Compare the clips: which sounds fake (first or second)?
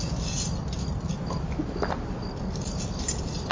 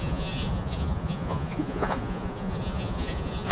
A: second